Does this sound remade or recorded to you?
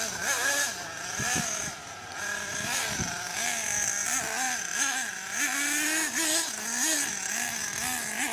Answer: recorded